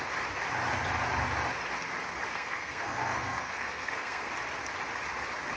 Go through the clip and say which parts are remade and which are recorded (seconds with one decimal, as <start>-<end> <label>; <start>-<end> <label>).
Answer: 0.0-2.3 recorded; 2.3-4.3 remade; 4.3-5.6 recorded